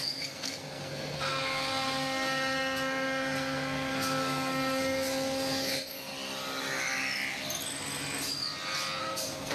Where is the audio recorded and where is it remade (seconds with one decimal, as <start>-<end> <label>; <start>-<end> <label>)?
0.0-6.1 remade; 6.1-9.0 recorded; 9.0-9.5 remade